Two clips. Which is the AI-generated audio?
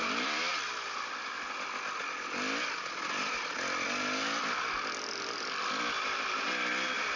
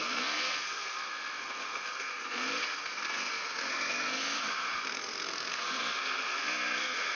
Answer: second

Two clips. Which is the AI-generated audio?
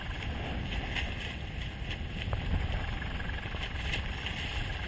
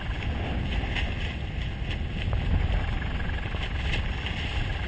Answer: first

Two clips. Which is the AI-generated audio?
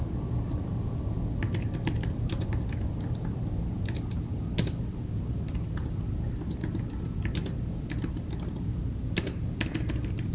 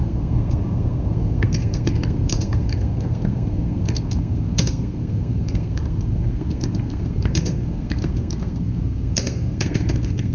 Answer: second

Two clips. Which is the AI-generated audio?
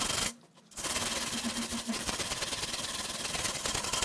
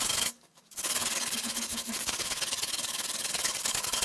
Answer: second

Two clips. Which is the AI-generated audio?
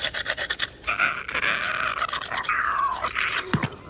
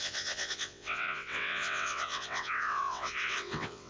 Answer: second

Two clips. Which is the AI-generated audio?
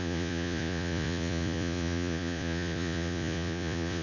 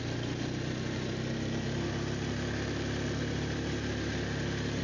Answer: first